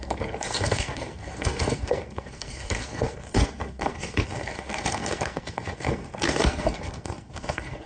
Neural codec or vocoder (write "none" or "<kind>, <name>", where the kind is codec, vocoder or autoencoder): codec, SNAC